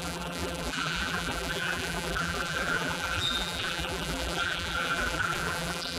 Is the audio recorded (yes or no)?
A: no